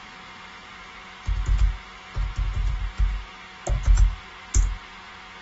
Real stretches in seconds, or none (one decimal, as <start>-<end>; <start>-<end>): 0.0-5.4